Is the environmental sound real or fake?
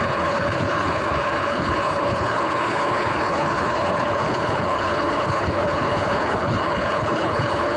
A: fake